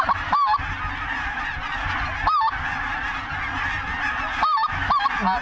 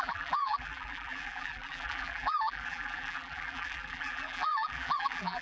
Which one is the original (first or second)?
first